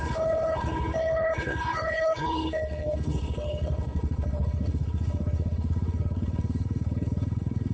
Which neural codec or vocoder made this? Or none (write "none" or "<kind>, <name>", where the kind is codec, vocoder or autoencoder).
codec, HILCodec